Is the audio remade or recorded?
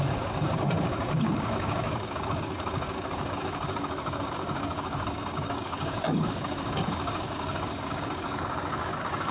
remade